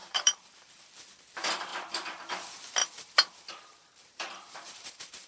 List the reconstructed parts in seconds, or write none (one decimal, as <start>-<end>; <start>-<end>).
0.0-0.9; 2.8-5.3